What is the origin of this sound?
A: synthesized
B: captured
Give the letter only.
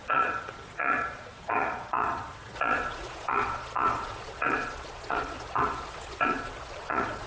A